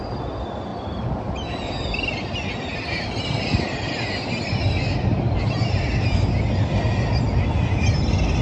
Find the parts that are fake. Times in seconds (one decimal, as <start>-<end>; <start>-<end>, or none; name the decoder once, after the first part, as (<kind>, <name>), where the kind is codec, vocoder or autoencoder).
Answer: none